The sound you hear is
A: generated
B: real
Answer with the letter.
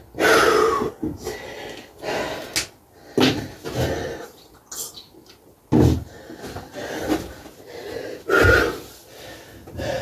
B